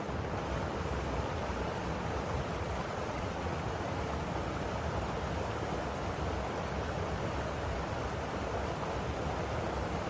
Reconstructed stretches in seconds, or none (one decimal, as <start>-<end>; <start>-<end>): 2.8-3.6